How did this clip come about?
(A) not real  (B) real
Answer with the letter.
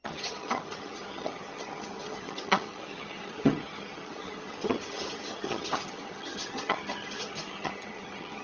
A